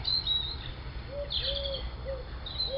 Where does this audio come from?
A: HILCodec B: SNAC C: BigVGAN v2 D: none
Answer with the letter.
D